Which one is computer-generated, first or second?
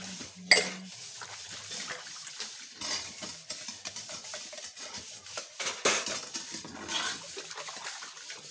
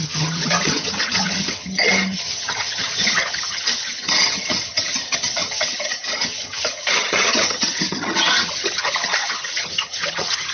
second